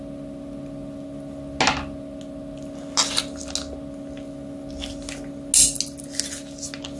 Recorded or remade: recorded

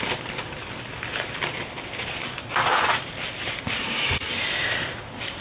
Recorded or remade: remade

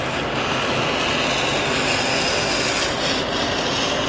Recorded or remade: recorded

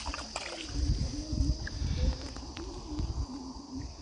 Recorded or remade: recorded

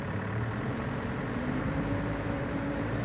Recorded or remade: remade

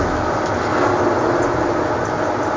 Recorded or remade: recorded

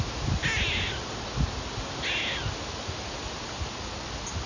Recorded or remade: recorded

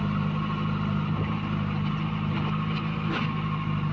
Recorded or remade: recorded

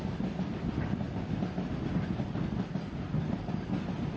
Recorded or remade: recorded